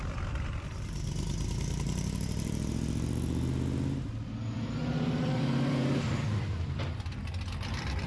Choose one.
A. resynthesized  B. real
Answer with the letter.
A